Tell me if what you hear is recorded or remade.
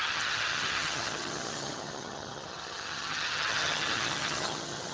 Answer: remade